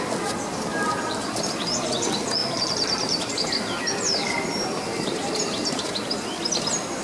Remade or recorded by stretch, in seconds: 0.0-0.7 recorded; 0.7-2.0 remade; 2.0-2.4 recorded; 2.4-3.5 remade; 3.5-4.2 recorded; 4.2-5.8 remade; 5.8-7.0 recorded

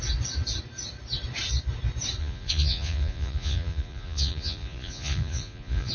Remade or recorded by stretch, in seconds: 0.0-2.2 recorded; 2.2-5.9 remade